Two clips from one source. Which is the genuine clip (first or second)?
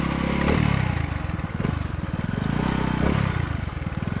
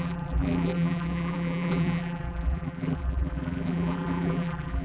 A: first